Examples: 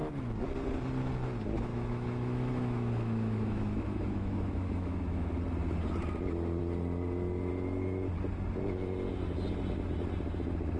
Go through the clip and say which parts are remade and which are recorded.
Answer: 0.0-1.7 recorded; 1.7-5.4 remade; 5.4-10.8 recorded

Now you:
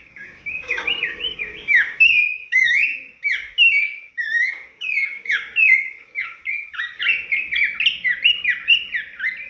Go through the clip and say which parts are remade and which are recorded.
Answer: 0.0-7.0 remade; 7.0-9.5 recorded

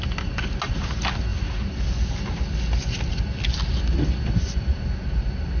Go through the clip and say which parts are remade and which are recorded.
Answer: 0.0-5.6 recorded

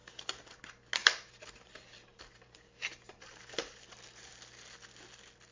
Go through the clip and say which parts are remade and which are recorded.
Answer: 0.0-0.6 remade; 0.6-1.0 recorded; 1.0-4.3 remade; 4.3-5.5 recorded

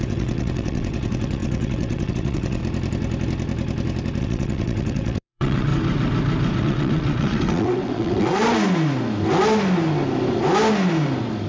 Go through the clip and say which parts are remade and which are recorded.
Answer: 0.0-2.6 remade; 2.6-4.2 recorded; 4.2-5.7 remade; 5.7-6.6 recorded; 6.6-8.4 remade; 8.4-11.5 recorded

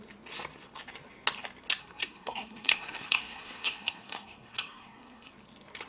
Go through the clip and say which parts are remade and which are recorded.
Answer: 0.0-1.8 recorded; 1.8-5.3 remade; 5.3-5.9 recorded

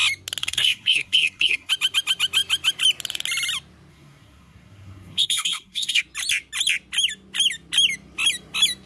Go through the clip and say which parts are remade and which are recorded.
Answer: 0.0-0.4 recorded; 0.4-1.7 remade; 1.7-3.9 recorded; 3.9-6.0 remade; 6.0-8.9 recorded

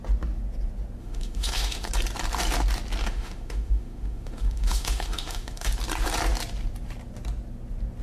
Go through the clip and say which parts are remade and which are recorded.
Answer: 0.0-1.0 recorded; 1.0-1.9 remade; 1.9-3.0 recorded; 3.0-5.7 remade; 5.7-8.0 recorded